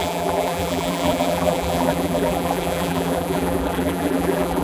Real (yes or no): no